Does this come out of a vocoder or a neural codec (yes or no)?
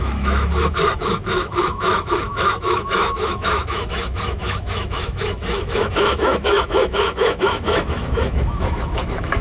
yes